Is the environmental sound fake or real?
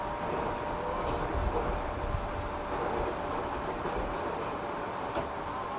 real